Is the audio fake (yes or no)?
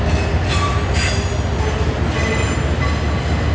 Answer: no